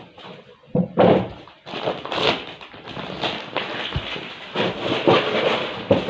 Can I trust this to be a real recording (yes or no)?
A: yes